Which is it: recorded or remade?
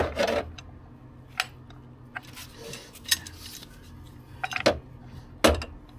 recorded